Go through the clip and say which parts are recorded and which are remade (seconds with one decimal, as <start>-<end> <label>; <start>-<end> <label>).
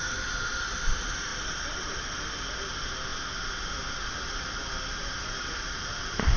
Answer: 0.0-1.3 recorded; 1.3-2.0 remade; 2.0-6.4 recorded